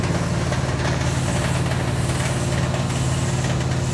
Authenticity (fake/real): real